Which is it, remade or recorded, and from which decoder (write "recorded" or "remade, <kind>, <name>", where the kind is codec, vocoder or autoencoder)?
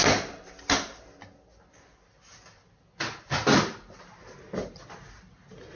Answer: recorded